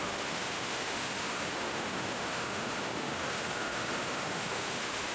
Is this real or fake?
fake